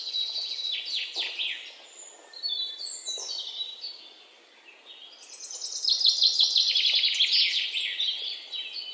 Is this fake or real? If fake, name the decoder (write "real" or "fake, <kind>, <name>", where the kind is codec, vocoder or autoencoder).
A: real